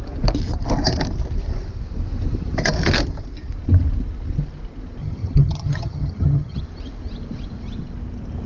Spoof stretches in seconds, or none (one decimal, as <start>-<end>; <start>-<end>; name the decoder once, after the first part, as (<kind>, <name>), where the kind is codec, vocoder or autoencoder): 5.0-6.6 (vocoder, HiFi-GAN)